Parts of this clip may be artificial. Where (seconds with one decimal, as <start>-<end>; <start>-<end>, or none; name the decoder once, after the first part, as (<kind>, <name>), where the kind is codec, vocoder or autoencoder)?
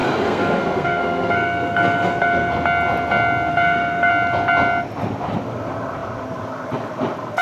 0.0-2.5 (codec, SNAC); 3.5-4.1